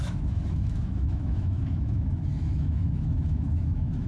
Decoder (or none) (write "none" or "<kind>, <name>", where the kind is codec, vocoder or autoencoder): autoencoder, DAC-VAE